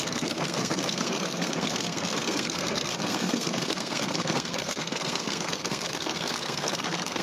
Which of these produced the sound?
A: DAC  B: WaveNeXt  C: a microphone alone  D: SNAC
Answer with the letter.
D